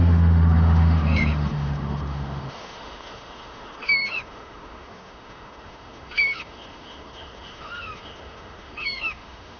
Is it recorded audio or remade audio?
remade